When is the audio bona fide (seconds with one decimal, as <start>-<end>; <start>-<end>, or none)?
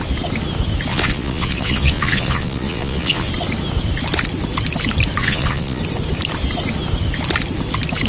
0.0-0.9; 3.3-5.2; 5.8-8.1